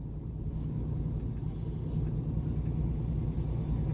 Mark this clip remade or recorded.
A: recorded